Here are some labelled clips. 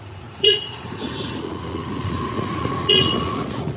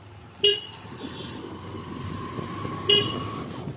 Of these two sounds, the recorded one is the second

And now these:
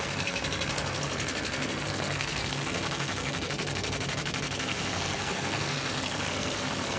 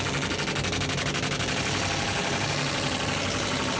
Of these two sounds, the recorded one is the second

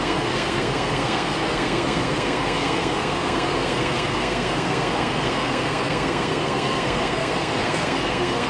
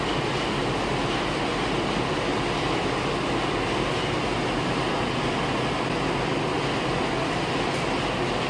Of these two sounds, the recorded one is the second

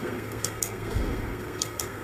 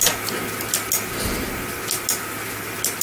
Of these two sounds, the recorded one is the second